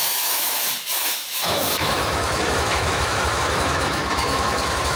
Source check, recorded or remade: remade